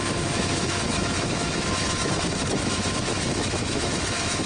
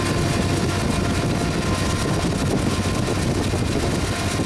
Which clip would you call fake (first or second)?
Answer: first